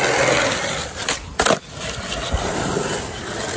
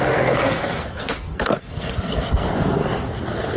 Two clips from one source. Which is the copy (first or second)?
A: second